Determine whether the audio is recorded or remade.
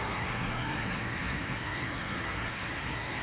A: remade